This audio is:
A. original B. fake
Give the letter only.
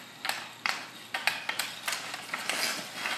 A